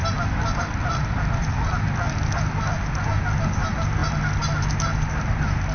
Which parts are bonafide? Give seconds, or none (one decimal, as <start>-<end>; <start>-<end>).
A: 0.0-3.4; 4.0-5.0